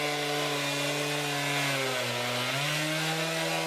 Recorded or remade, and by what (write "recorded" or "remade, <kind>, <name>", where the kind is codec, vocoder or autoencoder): recorded